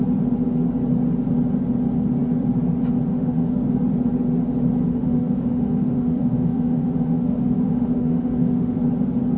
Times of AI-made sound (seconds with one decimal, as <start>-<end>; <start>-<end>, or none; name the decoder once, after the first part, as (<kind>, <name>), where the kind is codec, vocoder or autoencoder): 3.1-3.6 (autoencoder, DAC-VAE); 4.9-8.8